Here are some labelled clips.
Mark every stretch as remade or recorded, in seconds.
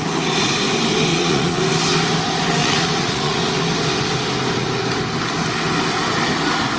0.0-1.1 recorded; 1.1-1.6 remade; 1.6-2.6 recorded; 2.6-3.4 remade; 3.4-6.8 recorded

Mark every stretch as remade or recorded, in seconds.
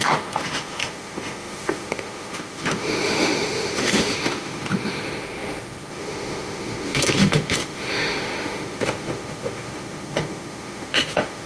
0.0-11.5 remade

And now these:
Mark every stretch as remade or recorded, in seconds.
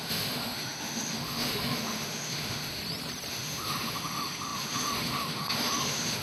0.0-2.8 remade; 2.8-3.3 recorded; 3.3-6.2 remade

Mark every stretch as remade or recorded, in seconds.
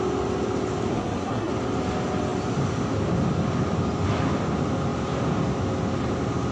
0.0-0.9 recorded; 0.9-1.5 remade; 1.5-6.5 recorded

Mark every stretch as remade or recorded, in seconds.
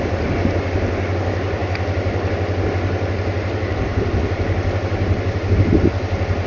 0.0-6.5 recorded